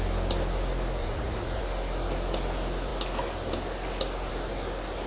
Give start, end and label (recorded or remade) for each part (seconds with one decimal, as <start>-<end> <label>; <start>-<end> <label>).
0.0-1.0 recorded; 1.0-1.6 remade; 1.6-5.1 recorded